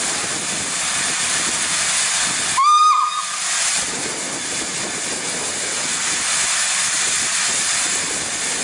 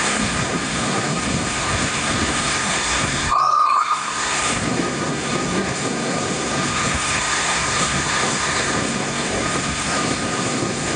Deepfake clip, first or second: second